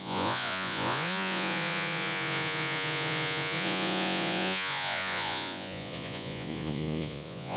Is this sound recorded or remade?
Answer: remade